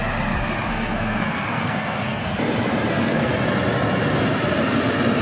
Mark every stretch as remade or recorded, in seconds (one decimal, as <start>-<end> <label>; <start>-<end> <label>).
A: 0.0-0.7 recorded; 0.7-2.2 remade; 2.2-2.9 recorded; 2.9-3.3 remade; 3.3-5.2 recorded